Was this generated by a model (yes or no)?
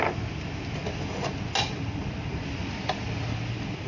no